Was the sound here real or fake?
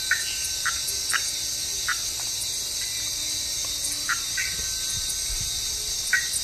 real